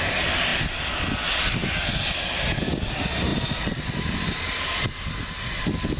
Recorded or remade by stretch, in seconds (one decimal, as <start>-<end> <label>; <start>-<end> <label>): 0.0-6.0 recorded